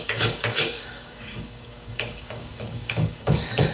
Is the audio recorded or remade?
remade